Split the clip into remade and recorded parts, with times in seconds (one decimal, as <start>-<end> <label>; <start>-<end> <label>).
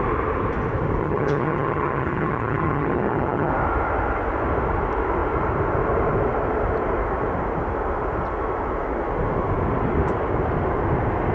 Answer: 0.0-1.0 recorded; 1.0-3.5 remade; 3.5-11.3 recorded